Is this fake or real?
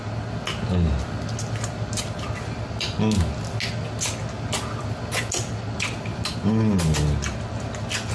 real